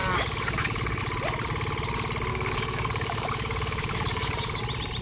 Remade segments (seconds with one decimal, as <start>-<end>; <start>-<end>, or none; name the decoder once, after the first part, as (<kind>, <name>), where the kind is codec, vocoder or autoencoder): 0.0-1.0 (codec, DAC); 2.3-4.6